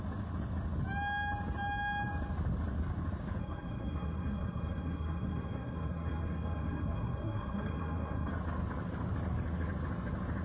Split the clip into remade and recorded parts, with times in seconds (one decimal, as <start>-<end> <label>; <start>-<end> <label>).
0.0-3.4 recorded; 3.4-8.3 remade; 8.3-10.4 recorded